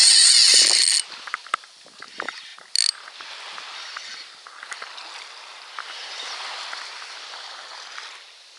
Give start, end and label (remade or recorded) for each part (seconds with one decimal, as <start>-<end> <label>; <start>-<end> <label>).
0.0-8.6 recorded